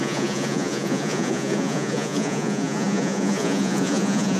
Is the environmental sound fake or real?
fake